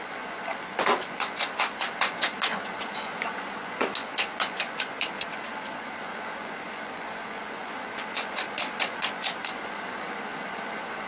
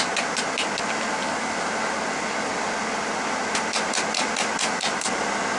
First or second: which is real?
second